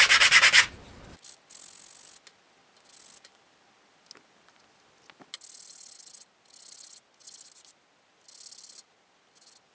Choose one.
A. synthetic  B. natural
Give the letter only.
B